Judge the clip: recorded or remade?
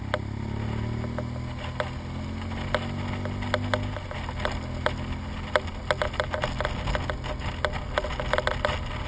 recorded